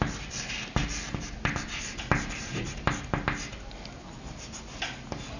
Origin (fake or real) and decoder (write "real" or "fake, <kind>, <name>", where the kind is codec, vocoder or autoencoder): real